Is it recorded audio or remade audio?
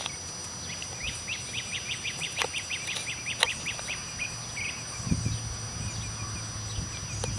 recorded